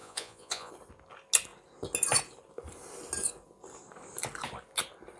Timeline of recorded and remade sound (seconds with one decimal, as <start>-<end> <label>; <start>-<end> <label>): 0.0-0.7 remade; 0.7-5.2 recorded